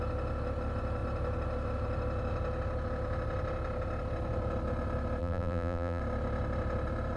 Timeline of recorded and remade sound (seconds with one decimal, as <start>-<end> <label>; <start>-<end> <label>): 0.0-5.2 recorded; 5.2-6.0 remade; 6.0-7.2 recorded